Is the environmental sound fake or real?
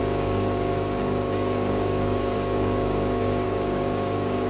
fake